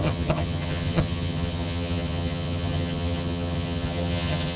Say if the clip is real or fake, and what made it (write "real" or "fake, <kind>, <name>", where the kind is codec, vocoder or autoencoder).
fake, vocoder, HiFi-GAN